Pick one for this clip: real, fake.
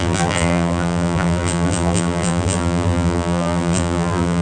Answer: fake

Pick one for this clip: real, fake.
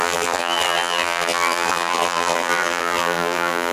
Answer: fake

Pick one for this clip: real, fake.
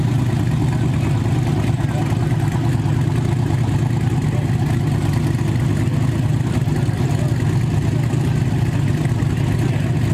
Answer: real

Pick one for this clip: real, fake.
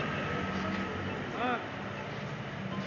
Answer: real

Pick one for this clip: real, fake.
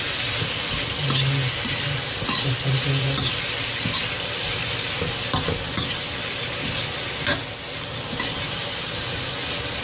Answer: real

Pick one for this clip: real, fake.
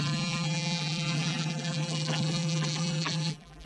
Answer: fake